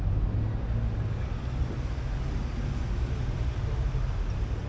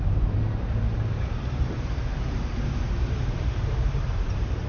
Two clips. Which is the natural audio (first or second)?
first